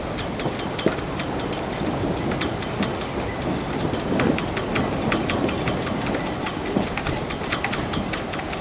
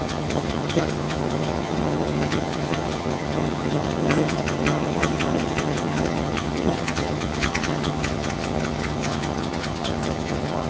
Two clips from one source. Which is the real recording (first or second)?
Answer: first